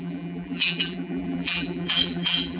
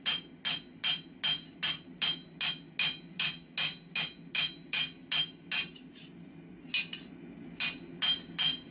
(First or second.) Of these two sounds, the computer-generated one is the first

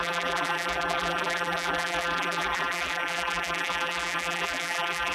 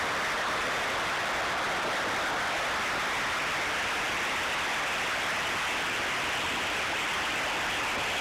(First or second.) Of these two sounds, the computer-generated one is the first